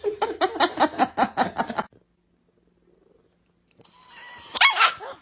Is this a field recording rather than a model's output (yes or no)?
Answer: yes